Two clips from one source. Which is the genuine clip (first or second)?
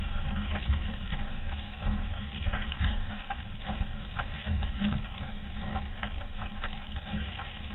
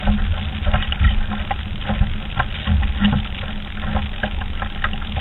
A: second